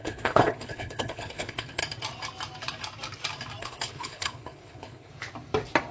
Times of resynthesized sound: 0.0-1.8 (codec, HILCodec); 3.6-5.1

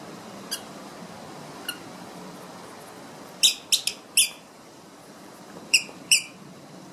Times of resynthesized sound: 0.0-0.9 (vocoder, BigVGAN v2); 4.4-6.9

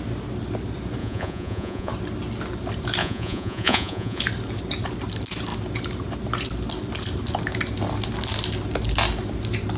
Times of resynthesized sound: 1.0-1.9 (vocoder, Vocos); 3.0-4.2

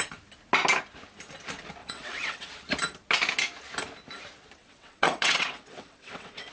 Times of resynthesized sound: 1.8-2.5 (vocoder, WaveNeXt); 4.6-6.5